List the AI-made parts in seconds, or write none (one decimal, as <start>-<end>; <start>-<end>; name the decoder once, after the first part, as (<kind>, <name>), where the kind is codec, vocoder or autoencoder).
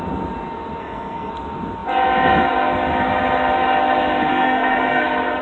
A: 0.8-1.3 (codec, SNAC); 4.3-5.0